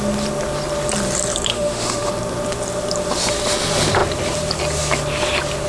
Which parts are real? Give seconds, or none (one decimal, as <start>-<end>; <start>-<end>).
0.0-1.5; 2.1-5.7